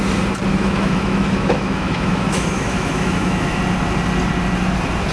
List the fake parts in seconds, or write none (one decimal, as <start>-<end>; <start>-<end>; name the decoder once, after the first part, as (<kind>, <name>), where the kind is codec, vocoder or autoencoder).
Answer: 0.5-3.6 (autoencoder, DAC-VAE)